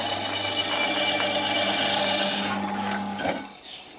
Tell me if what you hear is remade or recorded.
recorded